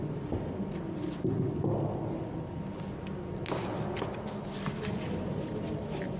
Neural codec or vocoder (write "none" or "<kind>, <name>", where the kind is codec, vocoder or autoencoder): none